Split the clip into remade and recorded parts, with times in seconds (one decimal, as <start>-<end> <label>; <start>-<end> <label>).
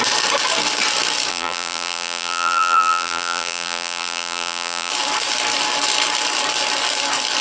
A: 0.0-1.3 recorded; 1.3-4.9 remade; 4.9-7.4 recorded